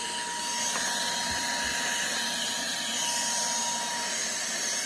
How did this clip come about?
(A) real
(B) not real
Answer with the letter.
A